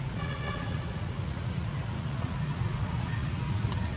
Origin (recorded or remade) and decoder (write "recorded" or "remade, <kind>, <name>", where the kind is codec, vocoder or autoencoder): remade, vocoder, Vocos